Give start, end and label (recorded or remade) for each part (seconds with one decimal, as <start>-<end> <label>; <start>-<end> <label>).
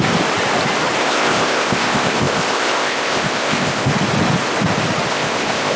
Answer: 0.0-1.0 recorded; 1.0-3.9 remade; 3.9-5.1 recorded; 5.1-5.8 remade